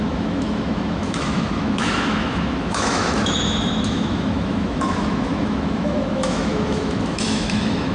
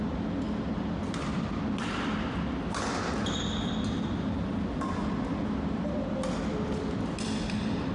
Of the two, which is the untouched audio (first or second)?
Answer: second